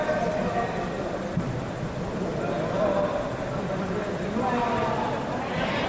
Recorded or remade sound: recorded